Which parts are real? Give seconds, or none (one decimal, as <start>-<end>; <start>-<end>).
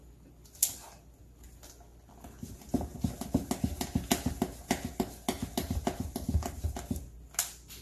0.0-7.8